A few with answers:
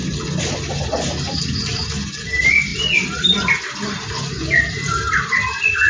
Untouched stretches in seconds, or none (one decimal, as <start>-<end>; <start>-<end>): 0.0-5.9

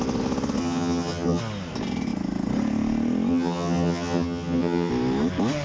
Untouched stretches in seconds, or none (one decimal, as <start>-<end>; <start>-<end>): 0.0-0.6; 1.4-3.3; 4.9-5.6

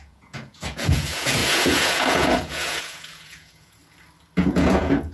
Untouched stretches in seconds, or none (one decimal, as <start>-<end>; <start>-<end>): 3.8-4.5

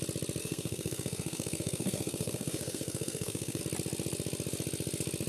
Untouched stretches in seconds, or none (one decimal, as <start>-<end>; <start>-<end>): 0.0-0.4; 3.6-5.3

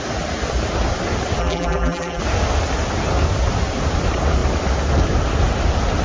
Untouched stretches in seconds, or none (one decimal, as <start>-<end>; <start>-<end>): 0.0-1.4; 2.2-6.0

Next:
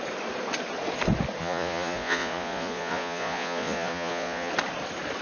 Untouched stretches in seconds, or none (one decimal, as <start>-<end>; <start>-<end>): 0.0-1.4; 4.5-5.2